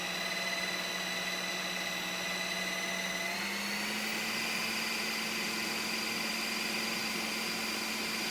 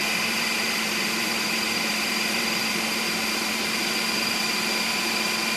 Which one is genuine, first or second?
first